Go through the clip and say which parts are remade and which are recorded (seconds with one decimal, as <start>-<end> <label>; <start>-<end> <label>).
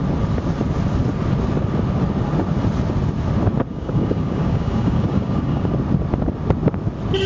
0.0-3.7 recorded; 3.7-5.7 remade; 5.7-7.3 recorded